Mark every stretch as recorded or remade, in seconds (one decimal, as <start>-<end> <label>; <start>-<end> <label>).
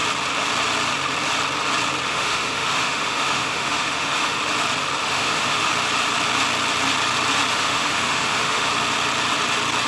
0.0-2.1 recorded; 2.1-4.4 remade; 4.4-5.0 recorded; 5.0-5.7 remade; 5.7-7.5 recorded; 7.5-8.7 remade; 8.7-9.9 recorded